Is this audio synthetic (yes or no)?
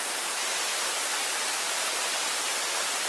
no